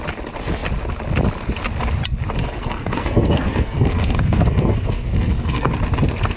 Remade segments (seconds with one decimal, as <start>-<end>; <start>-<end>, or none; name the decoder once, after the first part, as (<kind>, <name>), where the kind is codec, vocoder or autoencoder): 2.4-5.7 (codec, SNAC)